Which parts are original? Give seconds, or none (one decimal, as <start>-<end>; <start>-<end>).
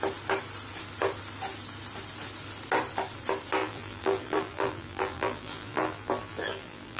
0.0-3.6